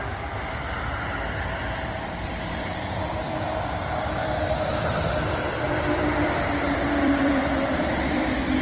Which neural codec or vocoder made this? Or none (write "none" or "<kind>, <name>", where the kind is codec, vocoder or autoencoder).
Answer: vocoder, BigVGAN v2